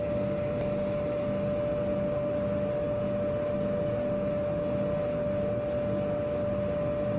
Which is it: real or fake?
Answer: real